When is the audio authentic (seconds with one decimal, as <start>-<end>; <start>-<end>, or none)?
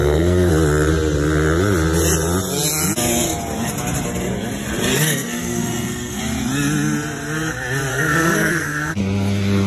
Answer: 0.5-4.9; 6.2-7.9; 9.0-9.7